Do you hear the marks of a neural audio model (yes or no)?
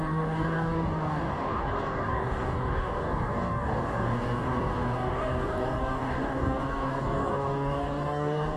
yes